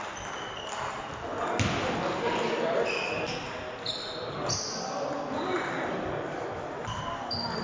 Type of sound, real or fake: real